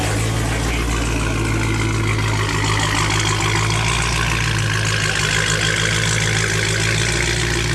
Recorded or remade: recorded